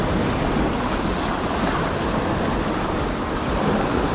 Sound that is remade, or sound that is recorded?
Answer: recorded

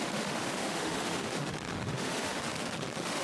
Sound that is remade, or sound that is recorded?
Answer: remade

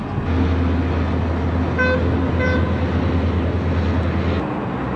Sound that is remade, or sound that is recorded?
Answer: recorded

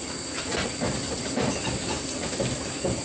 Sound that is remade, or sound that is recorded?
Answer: recorded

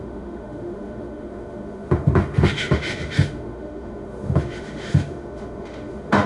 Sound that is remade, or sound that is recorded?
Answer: remade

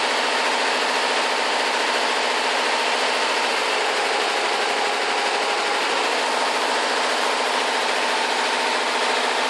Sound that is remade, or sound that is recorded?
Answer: recorded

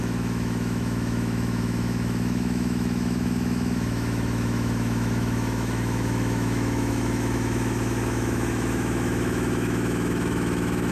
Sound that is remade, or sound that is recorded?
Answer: remade